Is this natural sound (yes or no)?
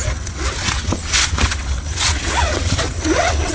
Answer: no